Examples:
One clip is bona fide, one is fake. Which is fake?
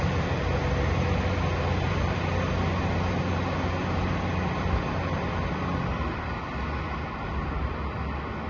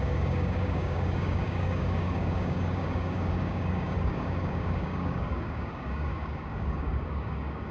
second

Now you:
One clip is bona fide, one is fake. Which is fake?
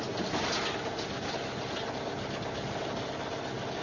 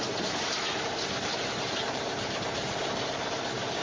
second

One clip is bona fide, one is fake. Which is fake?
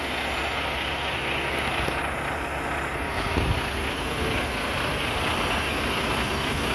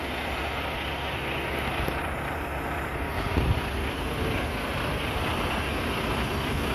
second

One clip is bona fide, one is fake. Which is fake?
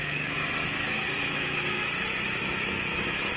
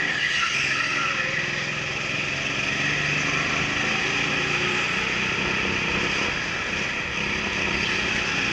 first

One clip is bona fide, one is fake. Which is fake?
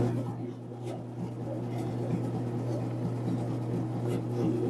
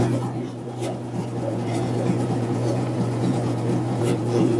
second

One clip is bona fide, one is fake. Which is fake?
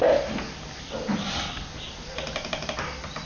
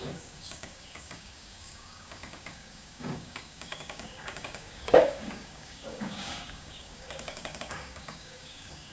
second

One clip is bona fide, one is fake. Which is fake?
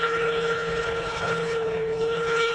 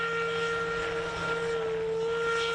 first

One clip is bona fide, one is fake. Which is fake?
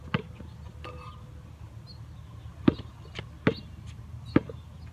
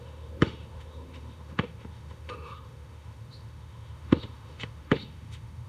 second